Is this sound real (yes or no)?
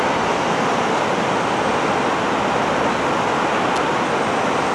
yes